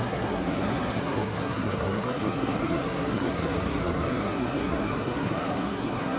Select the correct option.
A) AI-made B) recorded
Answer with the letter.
A